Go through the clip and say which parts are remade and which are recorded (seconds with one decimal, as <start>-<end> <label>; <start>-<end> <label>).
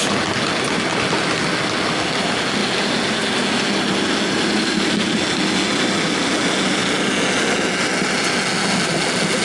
0.0-9.4 recorded